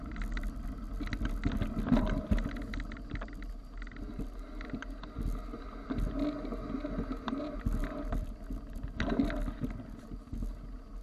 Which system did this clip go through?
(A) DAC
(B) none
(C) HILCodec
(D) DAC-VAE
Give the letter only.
B